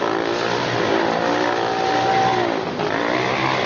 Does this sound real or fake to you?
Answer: real